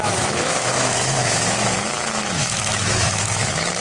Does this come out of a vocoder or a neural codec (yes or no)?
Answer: yes